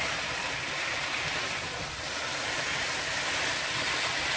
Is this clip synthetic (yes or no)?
no